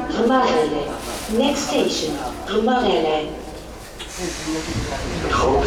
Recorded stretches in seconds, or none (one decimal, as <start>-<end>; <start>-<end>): 0.0-2.4; 4.0-4.5; 5.0-5.7

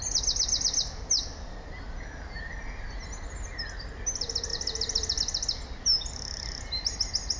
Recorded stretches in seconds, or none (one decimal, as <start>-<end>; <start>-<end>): 0.0-7.4

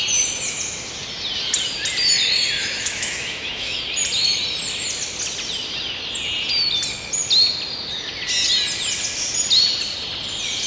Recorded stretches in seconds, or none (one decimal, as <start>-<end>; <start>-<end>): 0.0-2.6; 3.8-10.7

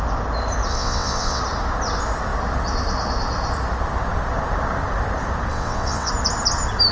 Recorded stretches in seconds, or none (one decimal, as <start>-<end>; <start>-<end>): 0.0-0.7; 1.4-5.5; 6.1-6.9